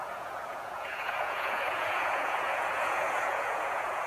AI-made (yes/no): yes